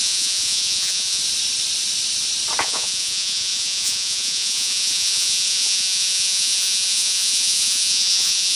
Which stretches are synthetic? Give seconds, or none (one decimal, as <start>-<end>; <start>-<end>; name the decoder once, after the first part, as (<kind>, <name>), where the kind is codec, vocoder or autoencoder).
0.0-1.2 (vocoder, Vocos); 2.6-8.6